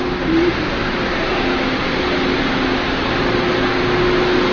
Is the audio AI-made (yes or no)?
no